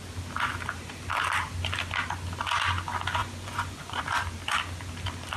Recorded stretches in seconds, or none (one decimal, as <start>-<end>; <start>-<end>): 0.0-3.2; 4.0-5.4